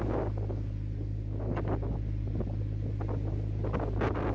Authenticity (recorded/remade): recorded